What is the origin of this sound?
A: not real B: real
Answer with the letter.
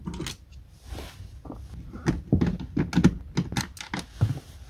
B